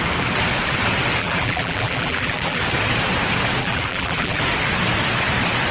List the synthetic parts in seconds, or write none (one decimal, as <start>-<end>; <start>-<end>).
1.2-2.6; 3.6-4.4